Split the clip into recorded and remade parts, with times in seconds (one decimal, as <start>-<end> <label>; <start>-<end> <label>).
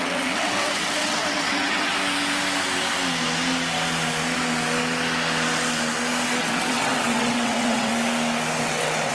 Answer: 0.0-1.9 remade; 1.9-6.4 recorded; 6.4-7.9 remade; 7.9-8.6 recorded; 8.6-9.1 remade